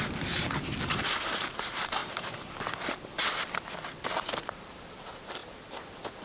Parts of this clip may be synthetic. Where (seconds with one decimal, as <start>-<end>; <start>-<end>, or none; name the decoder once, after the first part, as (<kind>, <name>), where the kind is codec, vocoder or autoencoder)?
0.0-2.0 (vocoder, BigVGAN v2); 4.0-5.4